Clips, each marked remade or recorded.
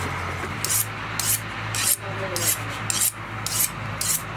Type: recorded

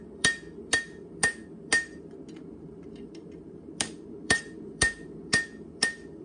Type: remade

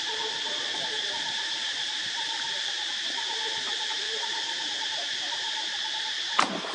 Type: remade